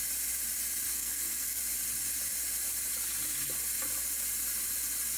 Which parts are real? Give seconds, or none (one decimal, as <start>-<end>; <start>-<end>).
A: 0.0-0.9; 1.6-5.2